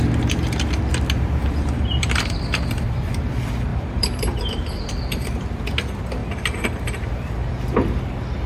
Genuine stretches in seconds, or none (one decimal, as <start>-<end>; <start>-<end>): 0.0-1.4; 3.3-3.7; 5.6-6.2; 7.6-8.5